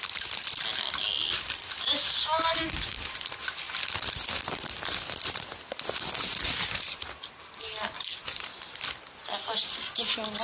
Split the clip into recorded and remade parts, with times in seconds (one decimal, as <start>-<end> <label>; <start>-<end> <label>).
0.0-10.4 recorded